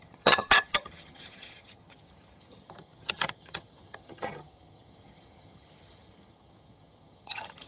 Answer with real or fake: fake